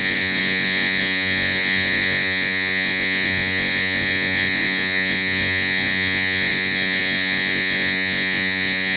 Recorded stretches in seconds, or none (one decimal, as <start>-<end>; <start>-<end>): none